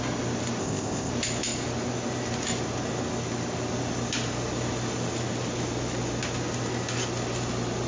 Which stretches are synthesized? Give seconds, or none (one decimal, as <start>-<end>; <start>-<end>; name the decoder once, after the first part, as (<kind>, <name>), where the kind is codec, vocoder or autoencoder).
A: 0.6-1.1 (codec, ZipCodec)